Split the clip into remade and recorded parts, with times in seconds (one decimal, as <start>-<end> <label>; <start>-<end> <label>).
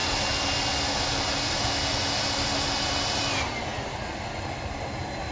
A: 0.0-5.3 recorded